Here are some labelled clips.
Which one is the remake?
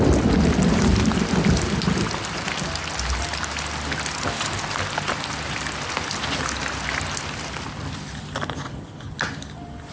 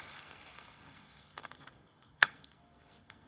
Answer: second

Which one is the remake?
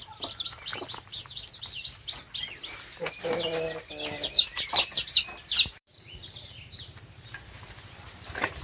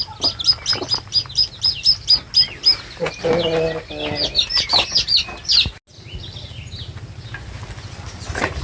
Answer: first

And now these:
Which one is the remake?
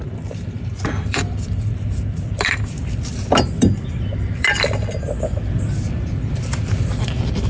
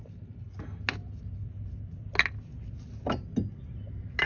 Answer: first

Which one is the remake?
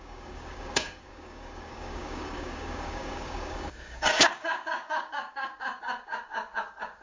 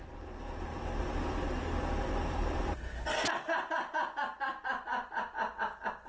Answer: first